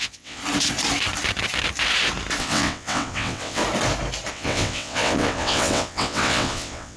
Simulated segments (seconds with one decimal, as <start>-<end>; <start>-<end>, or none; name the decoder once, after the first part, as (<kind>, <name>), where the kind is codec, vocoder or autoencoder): 0.0-0.4 (vocoder, WaveNeXt); 2.4-3.6; 4.3-7.0